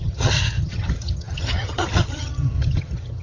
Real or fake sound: fake